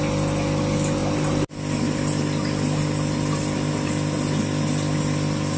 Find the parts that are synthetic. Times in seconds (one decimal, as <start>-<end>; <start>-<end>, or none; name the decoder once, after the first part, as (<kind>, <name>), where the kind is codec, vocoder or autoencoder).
none

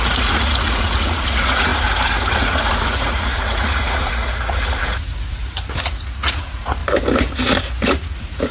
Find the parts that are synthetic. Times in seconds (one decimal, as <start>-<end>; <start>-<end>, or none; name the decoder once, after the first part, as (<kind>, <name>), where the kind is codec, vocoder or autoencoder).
0.0-6.8 (vocoder, Vocos); 7.9-8.5

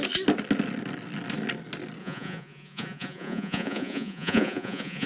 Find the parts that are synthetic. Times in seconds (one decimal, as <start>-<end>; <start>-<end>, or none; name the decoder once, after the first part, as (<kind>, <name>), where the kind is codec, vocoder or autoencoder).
2.0-5.1 (vocoder, Vocos)

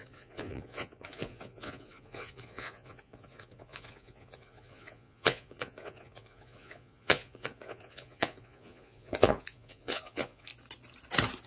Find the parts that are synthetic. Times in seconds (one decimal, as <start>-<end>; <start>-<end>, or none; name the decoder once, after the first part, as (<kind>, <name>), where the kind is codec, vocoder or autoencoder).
0.0-10.5 (vocoder, Vocos)

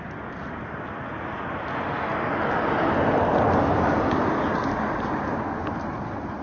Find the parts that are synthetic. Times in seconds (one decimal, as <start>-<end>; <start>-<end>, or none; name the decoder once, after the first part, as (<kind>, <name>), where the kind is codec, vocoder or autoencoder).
none

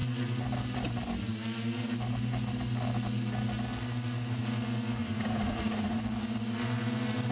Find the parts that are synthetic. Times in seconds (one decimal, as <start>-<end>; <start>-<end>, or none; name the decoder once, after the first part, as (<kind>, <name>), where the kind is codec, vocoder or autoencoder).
5.0-6.0 (vocoder, Vocos)